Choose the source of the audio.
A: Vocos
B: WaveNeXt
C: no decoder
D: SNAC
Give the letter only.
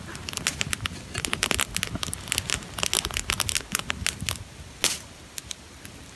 C